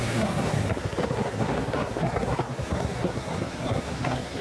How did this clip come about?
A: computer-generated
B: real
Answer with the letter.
A